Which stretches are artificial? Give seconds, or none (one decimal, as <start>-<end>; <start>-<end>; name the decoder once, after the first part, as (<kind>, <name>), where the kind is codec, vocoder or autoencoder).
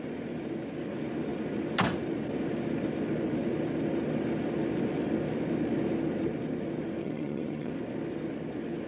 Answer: 7.0-7.7 (vocoder, HiFi-GAN)